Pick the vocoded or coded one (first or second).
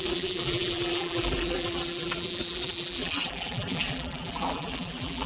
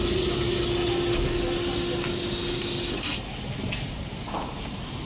first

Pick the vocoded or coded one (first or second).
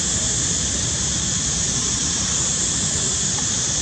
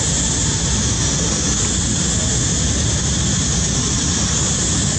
first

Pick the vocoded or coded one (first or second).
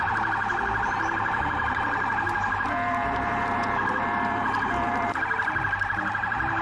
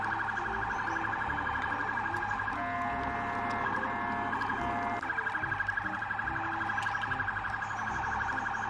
first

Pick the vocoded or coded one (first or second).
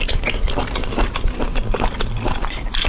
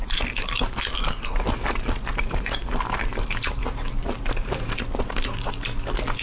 first